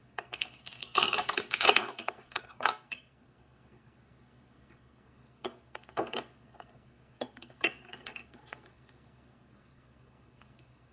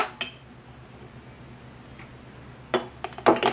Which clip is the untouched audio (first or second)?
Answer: second